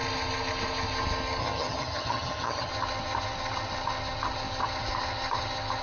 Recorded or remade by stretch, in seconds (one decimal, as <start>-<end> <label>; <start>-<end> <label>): 0.0-1.4 recorded; 1.4-2.7 remade; 2.7-5.8 recorded